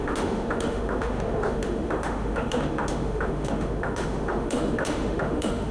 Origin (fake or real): fake